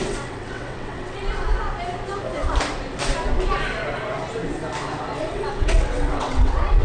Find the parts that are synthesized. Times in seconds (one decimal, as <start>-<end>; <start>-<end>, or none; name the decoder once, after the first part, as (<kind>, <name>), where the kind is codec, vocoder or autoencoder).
0.0-1.2 (vocoder, WaveNeXt); 5.3-6.8